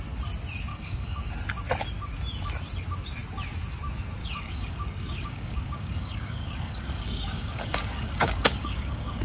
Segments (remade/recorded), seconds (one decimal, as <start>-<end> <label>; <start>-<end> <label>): 0.0-0.7 recorded; 0.7-1.3 remade; 1.3-4.2 recorded; 4.2-9.2 remade